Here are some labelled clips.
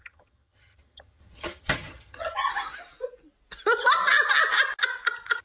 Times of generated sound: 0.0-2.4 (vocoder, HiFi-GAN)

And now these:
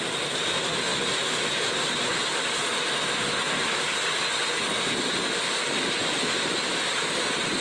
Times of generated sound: none

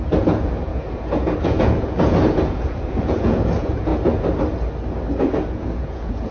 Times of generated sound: 0.0-3.9 (vocoder, Vocos); 5.2-6.3